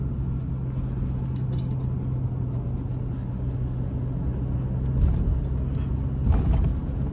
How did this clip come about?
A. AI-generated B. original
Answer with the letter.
B